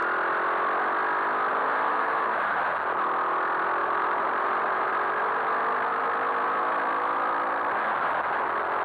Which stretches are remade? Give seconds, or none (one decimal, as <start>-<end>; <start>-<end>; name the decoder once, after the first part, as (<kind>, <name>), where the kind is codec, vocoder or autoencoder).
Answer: 1.5-2.6 (vocoder, BigVGAN v2); 3.8-4.9